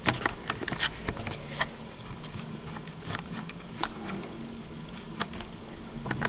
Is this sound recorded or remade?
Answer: remade